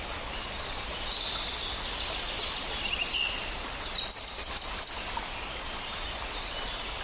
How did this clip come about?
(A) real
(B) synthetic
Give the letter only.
A